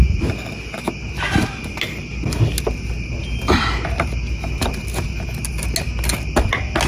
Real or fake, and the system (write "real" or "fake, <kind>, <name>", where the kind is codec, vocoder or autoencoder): real